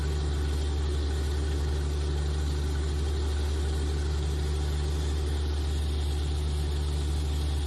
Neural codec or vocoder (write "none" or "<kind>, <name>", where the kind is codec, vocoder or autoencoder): none